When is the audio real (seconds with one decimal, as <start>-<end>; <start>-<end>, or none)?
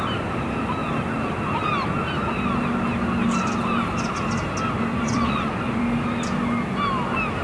0.0-4.9; 5.8-7.4